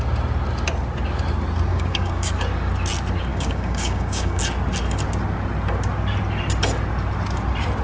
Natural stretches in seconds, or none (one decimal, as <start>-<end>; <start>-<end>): 0.0-1.7; 2.3-3.3; 4.4-7.8